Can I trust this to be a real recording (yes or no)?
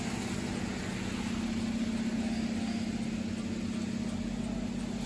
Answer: yes